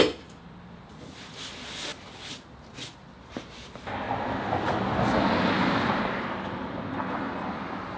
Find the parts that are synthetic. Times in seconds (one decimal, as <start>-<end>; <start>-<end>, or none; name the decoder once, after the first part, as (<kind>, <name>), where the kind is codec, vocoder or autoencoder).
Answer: none